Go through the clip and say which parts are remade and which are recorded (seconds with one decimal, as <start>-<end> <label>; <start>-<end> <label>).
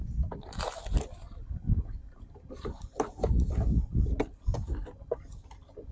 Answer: 0.0-2.0 recorded; 2.0-3.3 remade; 3.3-5.9 recorded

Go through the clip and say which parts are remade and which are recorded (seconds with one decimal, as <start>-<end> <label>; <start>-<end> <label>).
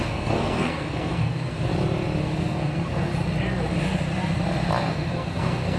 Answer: 0.0-1.7 remade; 1.7-2.2 recorded; 2.2-3.1 remade; 3.1-4.9 recorded; 4.9-5.8 remade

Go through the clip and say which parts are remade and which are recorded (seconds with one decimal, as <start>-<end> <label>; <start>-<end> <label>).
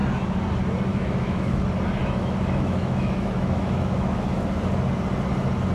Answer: 0.0-0.9 recorded; 0.9-1.6 remade; 1.6-2.0 recorded; 2.0-4.4 remade; 4.4-5.7 recorded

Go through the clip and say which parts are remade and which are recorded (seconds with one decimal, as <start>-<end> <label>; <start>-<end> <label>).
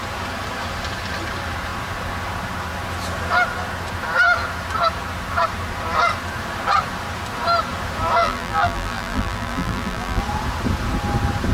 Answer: 0.0-8.2 recorded; 8.2-10.2 remade; 10.2-11.5 recorded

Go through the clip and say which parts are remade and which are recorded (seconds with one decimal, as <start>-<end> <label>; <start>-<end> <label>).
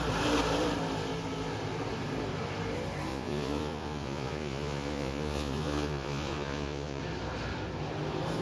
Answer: 0.0-3.1 recorded; 3.1-7.0 remade; 7.0-8.4 recorded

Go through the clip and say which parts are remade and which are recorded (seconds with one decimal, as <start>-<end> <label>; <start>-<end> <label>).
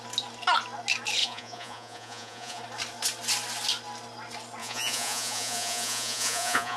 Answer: 0.0-1.2 recorded; 1.2-2.6 remade; 2.6-4.6 recorded; 4.6-6.8 remade